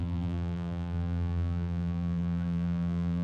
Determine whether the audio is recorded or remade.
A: remade